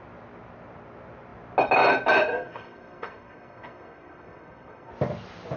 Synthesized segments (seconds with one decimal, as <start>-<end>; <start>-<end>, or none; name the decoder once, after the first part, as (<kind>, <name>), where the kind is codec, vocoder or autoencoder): 2.3-4.9 (codec, SNAC)